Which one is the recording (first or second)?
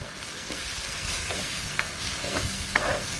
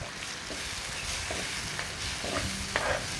second